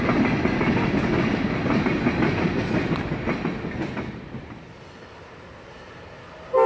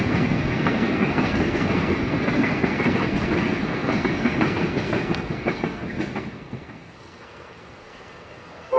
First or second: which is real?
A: first